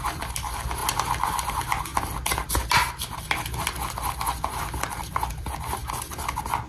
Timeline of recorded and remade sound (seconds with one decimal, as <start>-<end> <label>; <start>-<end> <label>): 0.0-6.7 recorded